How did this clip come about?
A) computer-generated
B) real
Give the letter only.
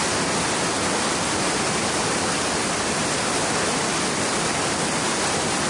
B